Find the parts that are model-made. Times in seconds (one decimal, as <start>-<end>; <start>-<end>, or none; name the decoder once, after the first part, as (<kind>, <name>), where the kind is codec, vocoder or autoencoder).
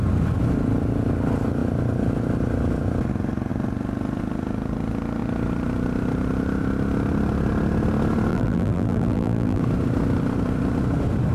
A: 8.3-9.6 (vocoder, BigVGAN v2)